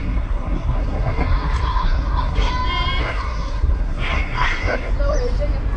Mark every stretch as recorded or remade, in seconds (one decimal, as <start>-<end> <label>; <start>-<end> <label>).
0.0-2.5 remade; 2.5-3.0 recorded; 3.0-4.9 remade; 4.9-5.8 recorded